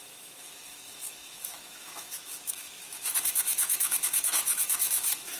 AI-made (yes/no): yes